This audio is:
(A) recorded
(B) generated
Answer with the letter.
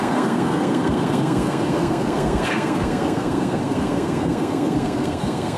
B